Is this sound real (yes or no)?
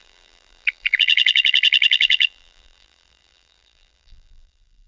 no